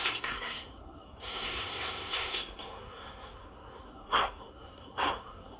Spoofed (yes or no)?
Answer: yes